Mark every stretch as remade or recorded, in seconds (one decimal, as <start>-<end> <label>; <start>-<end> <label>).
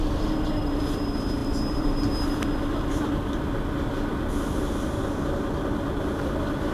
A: 0.0-6.7 recorded